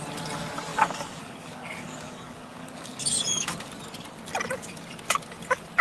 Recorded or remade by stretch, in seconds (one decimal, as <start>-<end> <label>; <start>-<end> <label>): 0.0-0.7 recorded; 0.7-3.7 remade; 3.7-5.8 recorded